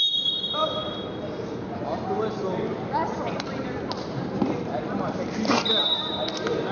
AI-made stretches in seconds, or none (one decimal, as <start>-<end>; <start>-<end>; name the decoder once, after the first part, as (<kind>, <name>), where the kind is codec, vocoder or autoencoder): none